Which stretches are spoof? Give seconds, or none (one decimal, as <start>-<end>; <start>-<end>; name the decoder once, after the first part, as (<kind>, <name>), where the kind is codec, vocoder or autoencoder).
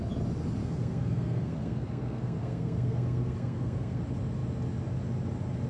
0.6-4.0 (codec, SNAC)